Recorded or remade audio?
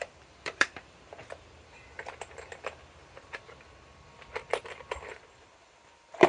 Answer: remade